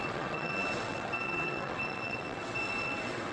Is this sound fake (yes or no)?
yes